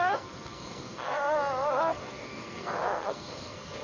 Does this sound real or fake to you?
fake